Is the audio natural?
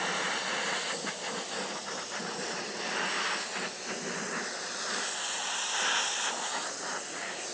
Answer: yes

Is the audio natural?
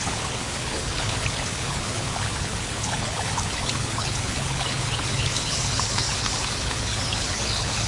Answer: no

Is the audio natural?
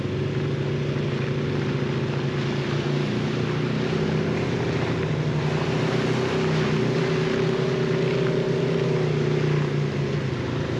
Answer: yes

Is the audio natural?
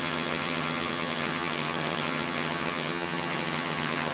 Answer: no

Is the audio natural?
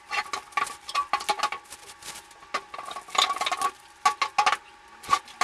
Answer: yes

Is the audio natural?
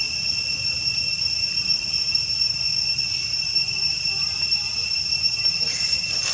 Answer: no